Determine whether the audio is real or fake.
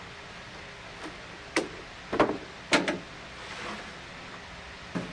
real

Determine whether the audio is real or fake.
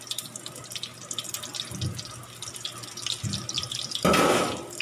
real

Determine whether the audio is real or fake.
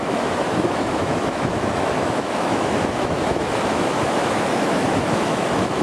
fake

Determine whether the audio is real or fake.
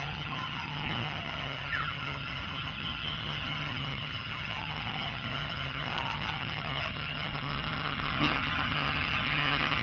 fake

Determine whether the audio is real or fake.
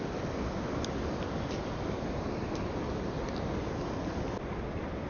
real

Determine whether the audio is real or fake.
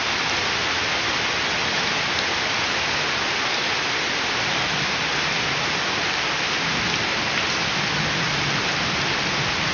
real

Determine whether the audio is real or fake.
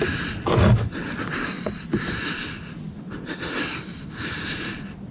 real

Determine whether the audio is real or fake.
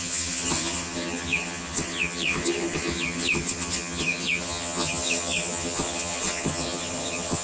fake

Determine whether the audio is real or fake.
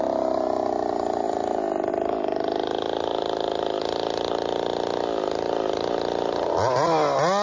fake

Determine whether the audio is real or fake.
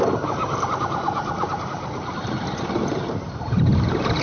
fake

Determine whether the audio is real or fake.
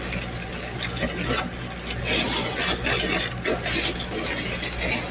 real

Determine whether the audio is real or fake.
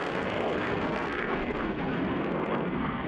fake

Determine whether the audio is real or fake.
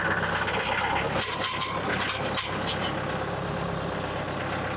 real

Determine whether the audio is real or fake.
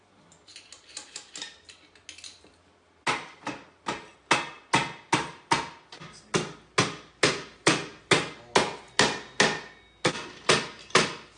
real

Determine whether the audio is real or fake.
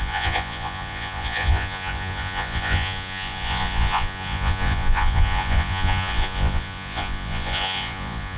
fake